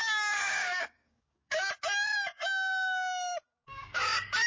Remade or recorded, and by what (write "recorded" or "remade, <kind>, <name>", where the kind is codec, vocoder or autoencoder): remade, codec, DAC